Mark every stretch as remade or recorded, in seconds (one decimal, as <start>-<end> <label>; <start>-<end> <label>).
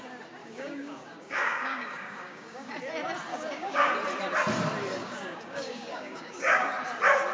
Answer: 0.0-0.4 recorded; 0.4-2.7 remade; 2.7-3.3 recorded; 3.3-3.9 remade; 3.9-5.0 recorded; 5.0-6.7 remade; 6.7-7.3 recorded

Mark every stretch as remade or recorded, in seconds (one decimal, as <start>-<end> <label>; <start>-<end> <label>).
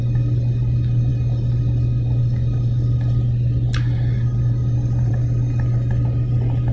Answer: 0.0-6.7 recorded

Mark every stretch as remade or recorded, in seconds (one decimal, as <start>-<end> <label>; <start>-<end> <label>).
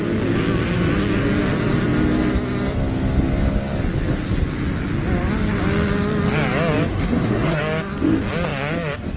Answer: 0.0-6.9 recorded; 6.9-7.6 remade; 7.6-9.2 recorded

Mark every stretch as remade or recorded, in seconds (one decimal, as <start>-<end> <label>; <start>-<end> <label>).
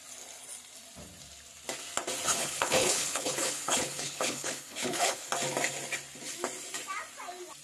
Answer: 0.0-2.4 recorded; 2.4-5.3 remade; 5.3-7.6 recorded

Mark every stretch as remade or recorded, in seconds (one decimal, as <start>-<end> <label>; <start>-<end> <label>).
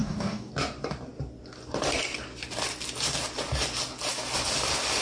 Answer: 0.0-0.5 remade; 0.5-5.0 recorded